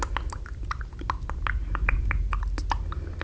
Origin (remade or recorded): recorded